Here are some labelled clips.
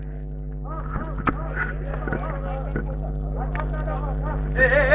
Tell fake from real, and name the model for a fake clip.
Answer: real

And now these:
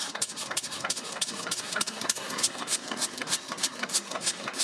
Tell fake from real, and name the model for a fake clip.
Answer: fake, codec, SNAC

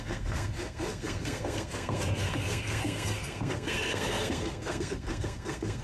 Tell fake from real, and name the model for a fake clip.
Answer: fake, codec, SNAC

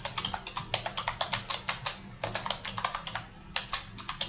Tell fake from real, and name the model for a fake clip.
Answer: real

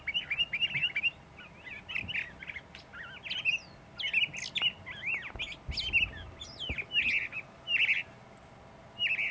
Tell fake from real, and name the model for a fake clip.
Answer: real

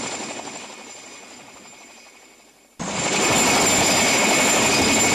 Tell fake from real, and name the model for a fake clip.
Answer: real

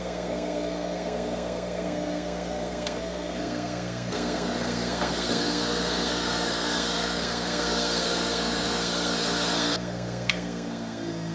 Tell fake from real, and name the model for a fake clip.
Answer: fake, codec, SNAC